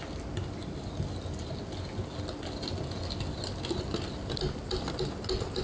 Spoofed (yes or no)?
no